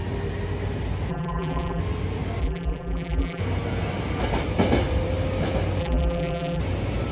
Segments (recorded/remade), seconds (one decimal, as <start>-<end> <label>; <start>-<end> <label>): 0.0-1.1 recorded; 1.1-1.8 remade; 1.8-2.4 recorded; 2.4-3.4 remade; 3.4-5.8 recorded; 5.8-6.6 remade; 6.6-7.1 recorded